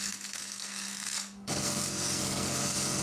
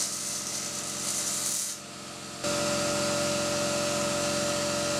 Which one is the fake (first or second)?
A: first